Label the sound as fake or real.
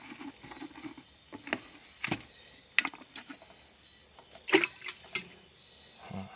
real